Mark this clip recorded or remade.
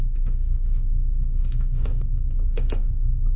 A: remade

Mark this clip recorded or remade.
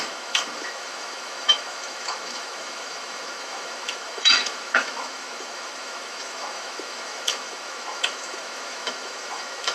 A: remade